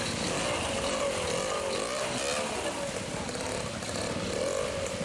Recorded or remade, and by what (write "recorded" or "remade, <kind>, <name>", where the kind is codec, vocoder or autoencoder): recorded